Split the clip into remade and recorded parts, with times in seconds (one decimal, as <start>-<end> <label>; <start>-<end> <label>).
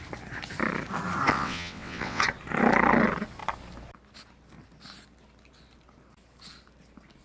0.0-1.3 recorded; 1.3-2.2 remade; 2.2-7.2 recorded